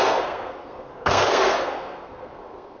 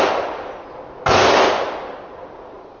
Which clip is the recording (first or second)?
second